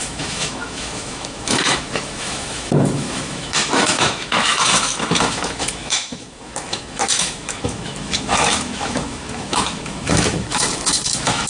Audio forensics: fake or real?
fake